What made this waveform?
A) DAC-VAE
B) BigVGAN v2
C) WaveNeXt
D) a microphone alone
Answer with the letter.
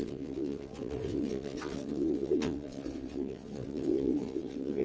C